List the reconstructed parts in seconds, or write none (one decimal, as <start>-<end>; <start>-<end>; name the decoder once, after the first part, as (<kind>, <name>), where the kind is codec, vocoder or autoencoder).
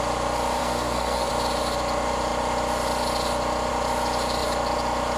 0.6-1.3 (codec, SNAC)